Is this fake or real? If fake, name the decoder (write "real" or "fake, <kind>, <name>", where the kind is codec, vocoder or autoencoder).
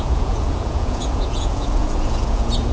fake, vocoder, Vocos